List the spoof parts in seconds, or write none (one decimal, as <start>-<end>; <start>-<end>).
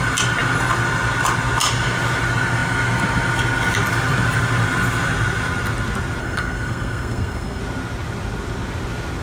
6.2-7.6